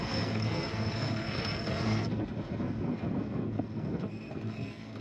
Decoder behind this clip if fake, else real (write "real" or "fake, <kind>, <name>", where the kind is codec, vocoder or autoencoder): fake, codec, SNAC